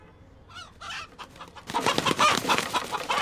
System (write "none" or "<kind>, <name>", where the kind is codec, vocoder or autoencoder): none